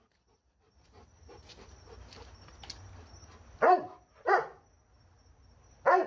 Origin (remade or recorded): recorded